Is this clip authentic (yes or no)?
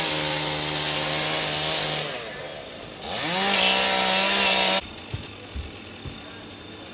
yes